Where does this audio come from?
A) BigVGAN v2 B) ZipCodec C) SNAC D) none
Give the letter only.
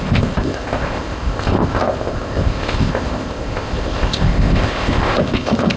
B